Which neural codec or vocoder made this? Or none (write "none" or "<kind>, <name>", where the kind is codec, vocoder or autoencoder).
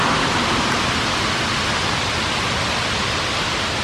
none